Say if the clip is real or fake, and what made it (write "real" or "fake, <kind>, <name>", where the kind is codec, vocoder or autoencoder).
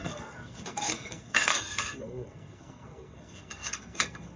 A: fake, codec, SNAC